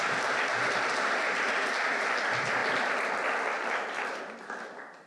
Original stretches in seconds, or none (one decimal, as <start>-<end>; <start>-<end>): 0.0-5.1